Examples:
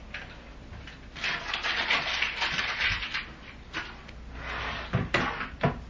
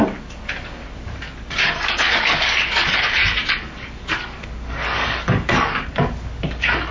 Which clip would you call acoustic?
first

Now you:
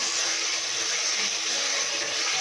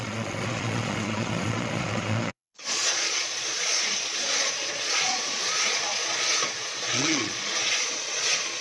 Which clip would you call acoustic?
first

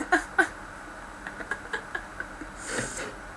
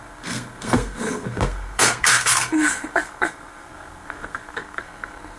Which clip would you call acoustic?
first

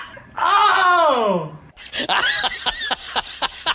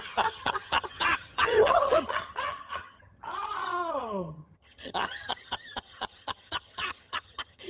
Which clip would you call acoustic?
first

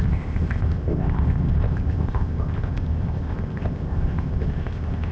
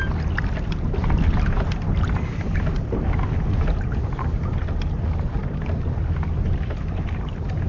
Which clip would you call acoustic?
second